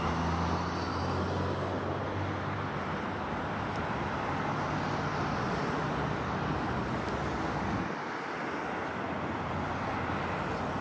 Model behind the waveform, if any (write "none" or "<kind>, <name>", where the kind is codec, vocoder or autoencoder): none